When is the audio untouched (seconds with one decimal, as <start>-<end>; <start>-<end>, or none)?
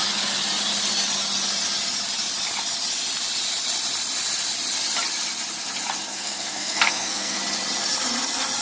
0.0-6.1; 7.4-8.6